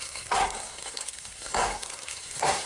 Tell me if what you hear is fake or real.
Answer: fake